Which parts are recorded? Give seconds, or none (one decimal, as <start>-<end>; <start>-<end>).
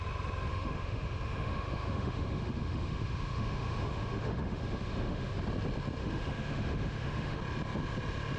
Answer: 0.0-0.5; 5.4-6.0; 7.4-8.4